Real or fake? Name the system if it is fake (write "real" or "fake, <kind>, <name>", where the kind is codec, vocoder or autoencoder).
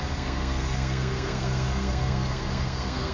fake, codec, SNAC